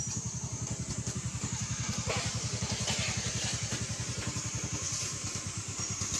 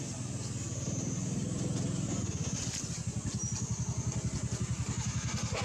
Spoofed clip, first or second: first